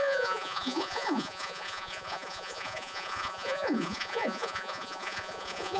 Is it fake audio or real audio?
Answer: fake